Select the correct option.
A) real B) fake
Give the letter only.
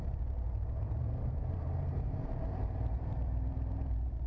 B